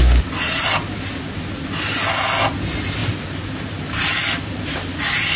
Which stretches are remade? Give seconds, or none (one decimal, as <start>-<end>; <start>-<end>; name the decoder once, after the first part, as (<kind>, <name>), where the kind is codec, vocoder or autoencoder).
none